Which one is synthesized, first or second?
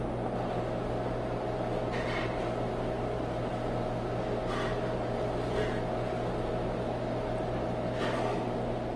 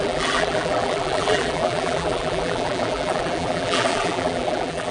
second